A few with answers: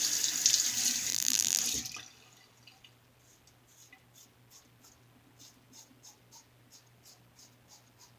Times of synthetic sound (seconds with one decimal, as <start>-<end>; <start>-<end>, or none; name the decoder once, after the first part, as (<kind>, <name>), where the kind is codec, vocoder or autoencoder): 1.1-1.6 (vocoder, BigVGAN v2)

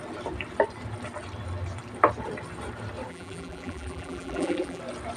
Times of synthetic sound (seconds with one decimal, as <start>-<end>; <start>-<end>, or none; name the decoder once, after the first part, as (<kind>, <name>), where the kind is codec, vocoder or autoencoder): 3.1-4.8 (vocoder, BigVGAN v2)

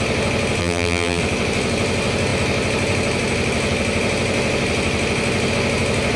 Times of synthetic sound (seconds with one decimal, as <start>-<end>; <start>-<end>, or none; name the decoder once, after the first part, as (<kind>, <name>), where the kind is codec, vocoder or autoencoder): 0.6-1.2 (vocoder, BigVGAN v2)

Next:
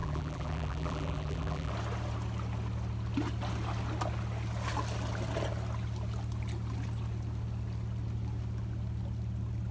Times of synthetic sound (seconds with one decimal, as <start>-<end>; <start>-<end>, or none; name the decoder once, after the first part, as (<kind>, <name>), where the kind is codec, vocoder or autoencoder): 0.0-1.7 (vocoder, BigVGAN v2)